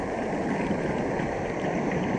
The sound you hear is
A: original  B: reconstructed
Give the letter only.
B